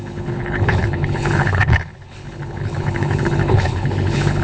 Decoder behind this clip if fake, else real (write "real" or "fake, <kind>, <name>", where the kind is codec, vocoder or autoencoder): fake, codec, HILCodec